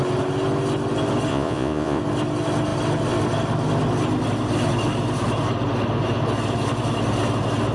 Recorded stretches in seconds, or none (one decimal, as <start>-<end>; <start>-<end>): 0.0-1.3; 2.0-7.7